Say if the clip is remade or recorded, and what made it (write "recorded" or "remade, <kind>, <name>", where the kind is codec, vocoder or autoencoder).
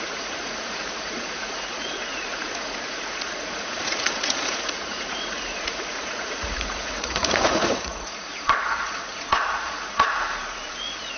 remade, vocoder, Vocos